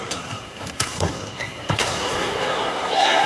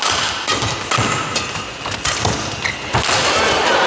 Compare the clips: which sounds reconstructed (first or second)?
first